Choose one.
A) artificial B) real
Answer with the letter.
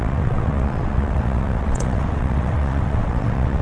A